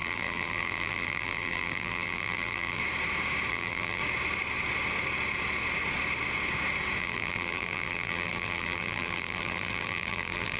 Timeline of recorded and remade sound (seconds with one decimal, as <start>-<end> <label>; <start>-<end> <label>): 0.0-2.8 remade; 2.8-3.5 recorded; 3.5-4.0 remade; 4.0-7.0 recorded; 7.0-10.6 remade